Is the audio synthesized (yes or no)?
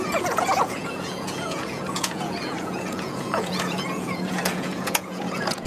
yes